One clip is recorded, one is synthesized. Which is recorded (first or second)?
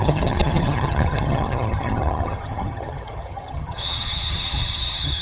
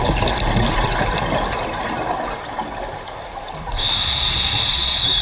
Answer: second